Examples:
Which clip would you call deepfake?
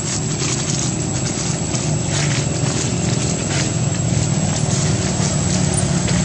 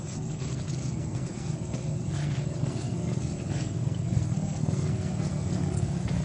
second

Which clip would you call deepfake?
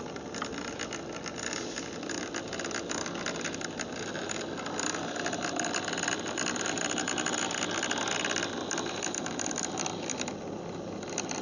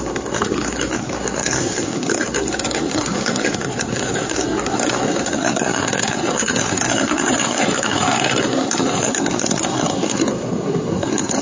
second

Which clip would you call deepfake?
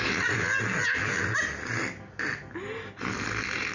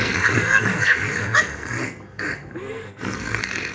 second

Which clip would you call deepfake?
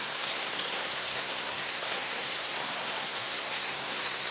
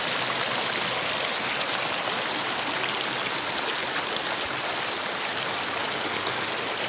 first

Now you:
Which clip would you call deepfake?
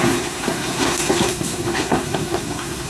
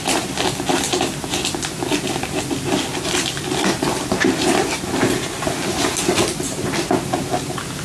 first